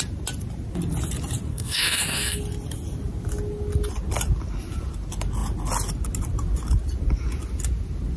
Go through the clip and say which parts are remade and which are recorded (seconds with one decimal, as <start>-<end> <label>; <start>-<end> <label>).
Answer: 0.0-1.5 recorded; 1.5-2.4 remade; 2.4-8.2 recorded